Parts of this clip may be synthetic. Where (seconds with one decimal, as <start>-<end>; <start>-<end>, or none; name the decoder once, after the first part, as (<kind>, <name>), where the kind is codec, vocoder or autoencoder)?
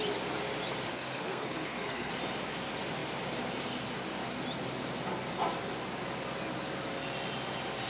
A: 0.9-2.1 (codec, SNAC)